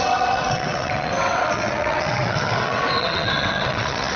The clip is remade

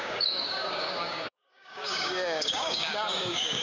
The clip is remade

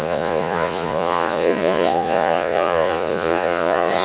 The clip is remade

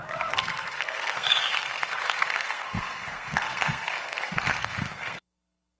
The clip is remade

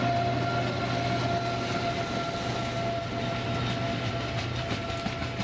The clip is recorded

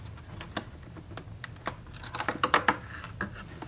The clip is recorded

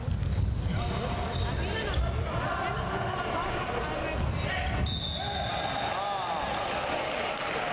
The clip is recorded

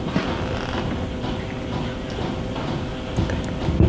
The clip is recorded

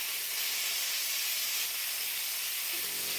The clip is recorded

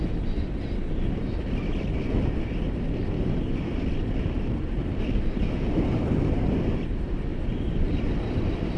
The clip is recorded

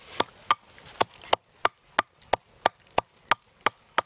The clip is recorded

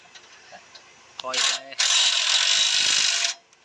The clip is recorded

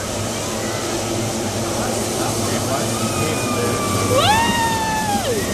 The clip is recorded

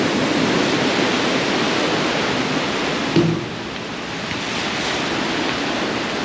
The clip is recorded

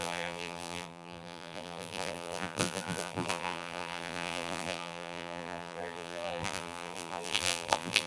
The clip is remade